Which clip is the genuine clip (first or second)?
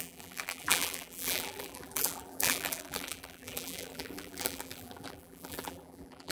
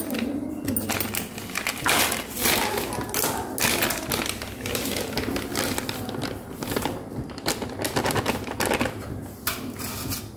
second